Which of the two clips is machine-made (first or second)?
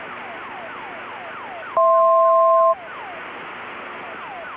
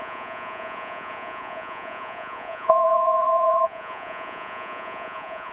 second